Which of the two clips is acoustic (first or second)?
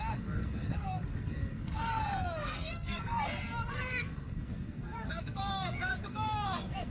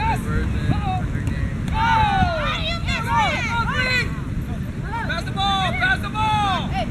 second